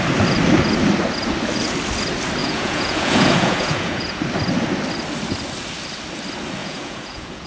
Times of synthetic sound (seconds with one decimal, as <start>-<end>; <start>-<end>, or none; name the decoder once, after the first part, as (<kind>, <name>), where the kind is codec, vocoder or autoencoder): 2.4-4.2 (vocoder, Vocos); 6.6-7.5